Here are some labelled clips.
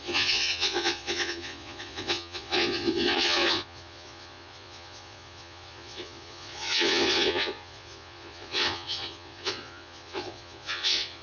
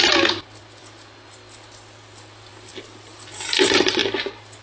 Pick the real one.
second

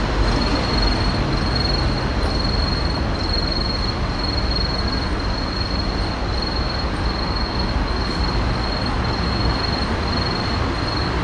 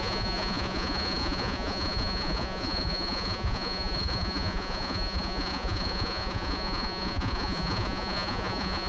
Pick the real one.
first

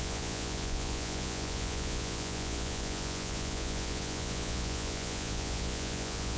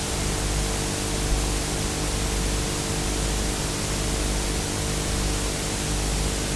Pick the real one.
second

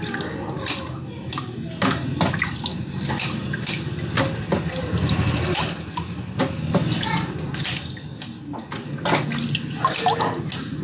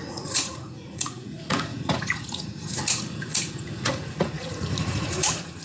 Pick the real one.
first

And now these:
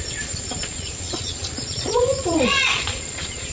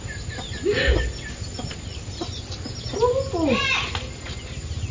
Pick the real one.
second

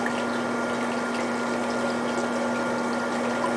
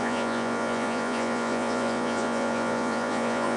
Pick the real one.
first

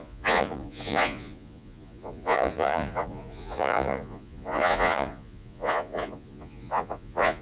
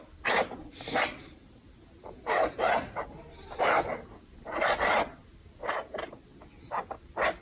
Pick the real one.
second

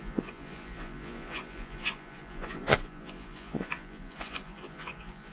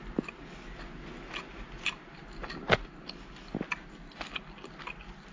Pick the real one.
second